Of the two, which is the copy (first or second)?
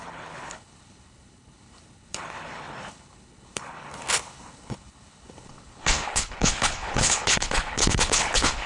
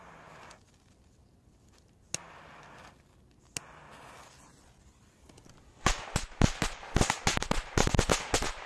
first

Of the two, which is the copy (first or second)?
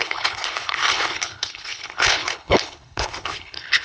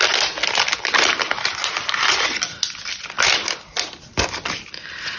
first